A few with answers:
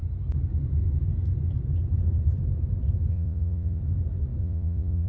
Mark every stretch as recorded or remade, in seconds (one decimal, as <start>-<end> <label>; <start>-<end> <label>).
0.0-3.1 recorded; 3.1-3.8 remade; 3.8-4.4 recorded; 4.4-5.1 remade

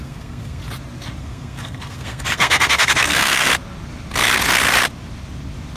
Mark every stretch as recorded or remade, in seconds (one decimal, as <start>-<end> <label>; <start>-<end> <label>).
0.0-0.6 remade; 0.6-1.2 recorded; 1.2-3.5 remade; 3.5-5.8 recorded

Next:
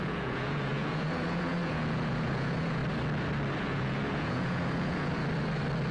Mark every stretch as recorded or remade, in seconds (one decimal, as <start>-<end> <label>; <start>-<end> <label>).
0.0-2.8 remade; 2.8-3.6 recorded; 3.6-5.2 remade; 5.2-5.9 recorded

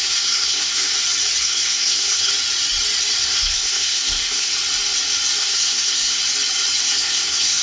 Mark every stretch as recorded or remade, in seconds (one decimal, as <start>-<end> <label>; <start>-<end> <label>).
0.0-0.9 remade; 0.9-1.4 recorded; 1.4-2.3 remade; 2.3-3.2 recorded; 3.2-4.5 remade; 4.5-5.4 recorded; 5.4-6.2 remade; 6.2-6.8 recorded; 6.8-7.6 remade

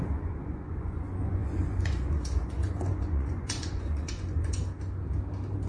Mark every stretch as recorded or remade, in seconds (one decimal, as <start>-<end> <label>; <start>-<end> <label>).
0.0-4.6 remade; 4.6-5.7 recorded

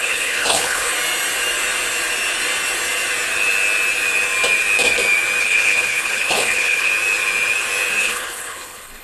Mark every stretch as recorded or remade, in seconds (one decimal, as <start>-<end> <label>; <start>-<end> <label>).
0.0-0.9 remade; 0.9-5.4 recorded; 5.4-6.9 remade; 6.9-8.0 recorded; 8.0-9.0 remade

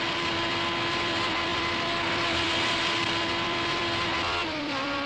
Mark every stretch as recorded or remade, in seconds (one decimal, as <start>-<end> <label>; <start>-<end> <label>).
0.0-5.1 remade